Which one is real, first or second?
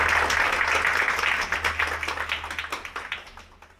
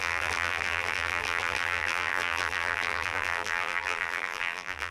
first